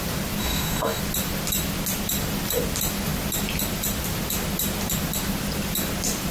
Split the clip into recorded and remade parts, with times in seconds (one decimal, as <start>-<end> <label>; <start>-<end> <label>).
0.0-0.4 recorded; 0.4-1.0 remade; 1.0-6.3 recorded